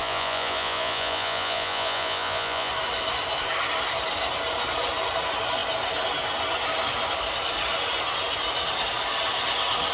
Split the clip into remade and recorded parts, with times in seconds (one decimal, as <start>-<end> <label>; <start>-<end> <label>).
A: 0.0-2.7 remade; 2.7-9.9 recorded